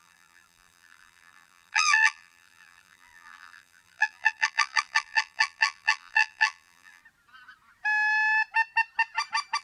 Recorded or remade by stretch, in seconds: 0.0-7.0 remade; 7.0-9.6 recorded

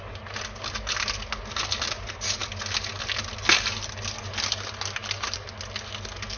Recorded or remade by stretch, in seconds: 0.0-5.0 recorded; 5.0-5.6 remade; 5.6-6.4 recorded

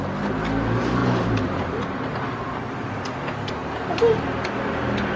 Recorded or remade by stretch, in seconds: 0.0-1.0 recorded; 1.0-2.7 remade; 2.7-5.2 recorded